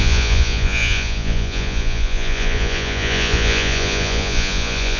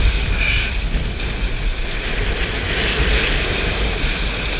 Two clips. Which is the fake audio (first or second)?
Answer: first